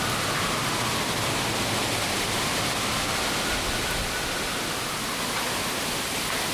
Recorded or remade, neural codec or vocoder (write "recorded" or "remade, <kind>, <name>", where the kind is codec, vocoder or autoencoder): recorded